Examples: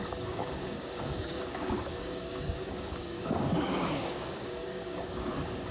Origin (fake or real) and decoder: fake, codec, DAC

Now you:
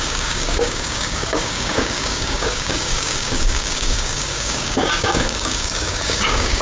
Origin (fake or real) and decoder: fake, codec, DAC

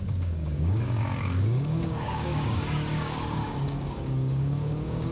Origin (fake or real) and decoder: fake, codec, DAC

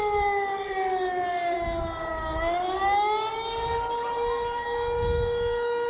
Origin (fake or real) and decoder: fake, codec, DAC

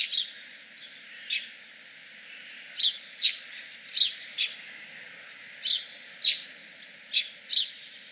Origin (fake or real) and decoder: real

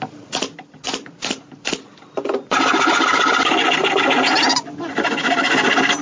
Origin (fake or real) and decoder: real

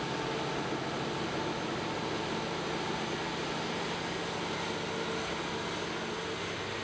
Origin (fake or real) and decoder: real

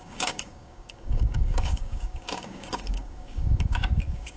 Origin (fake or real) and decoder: fake, codec, DAC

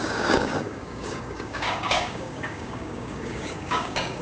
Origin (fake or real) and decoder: fake, codec, DAC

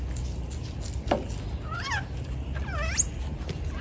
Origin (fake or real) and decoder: real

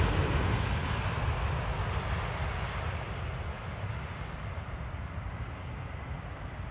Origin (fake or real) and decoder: real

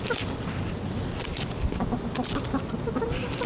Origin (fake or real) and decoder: real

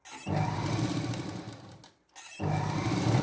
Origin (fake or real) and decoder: real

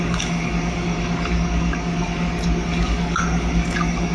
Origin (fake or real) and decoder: fake, codec, DAC